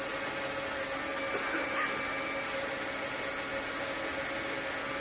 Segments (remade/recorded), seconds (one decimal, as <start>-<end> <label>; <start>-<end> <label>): 0.0-5.0 recorded